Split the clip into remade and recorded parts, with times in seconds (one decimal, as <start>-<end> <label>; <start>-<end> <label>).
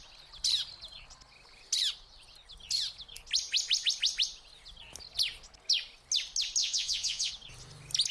0.0-6.6 recorded; 6.6-7.3 remade; 7.3-8.1 recorded